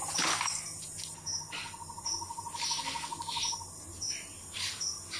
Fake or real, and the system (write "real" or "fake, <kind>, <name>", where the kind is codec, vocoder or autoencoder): real